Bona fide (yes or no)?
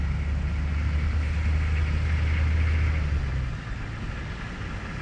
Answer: yes